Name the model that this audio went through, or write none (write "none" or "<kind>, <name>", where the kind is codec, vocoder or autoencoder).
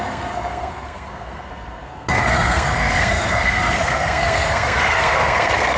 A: codec, SNAC